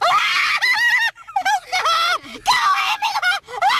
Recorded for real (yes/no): yes